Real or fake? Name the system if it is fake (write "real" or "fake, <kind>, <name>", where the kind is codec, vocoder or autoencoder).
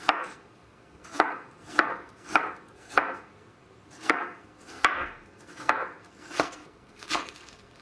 fake, codec, SNAC